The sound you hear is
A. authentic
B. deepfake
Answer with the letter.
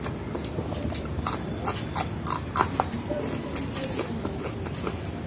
A